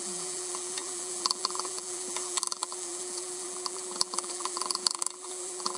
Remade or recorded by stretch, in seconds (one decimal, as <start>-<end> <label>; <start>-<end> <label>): 0.0-5.8 remade